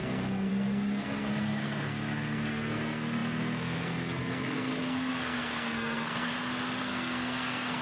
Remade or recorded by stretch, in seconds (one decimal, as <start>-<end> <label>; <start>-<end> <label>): 0.0-6.3 remade; 6.3-6.8 recorded; 6.8-7.8 remade